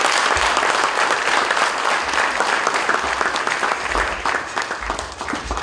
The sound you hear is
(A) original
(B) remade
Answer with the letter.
A